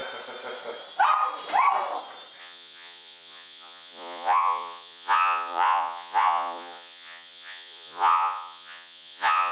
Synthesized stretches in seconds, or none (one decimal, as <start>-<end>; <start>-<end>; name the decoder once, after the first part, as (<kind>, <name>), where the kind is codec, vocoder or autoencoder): 2.4-9.5 (vocoder, Vocos)